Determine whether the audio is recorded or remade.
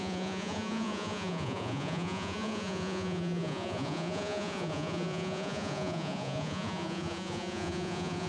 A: remade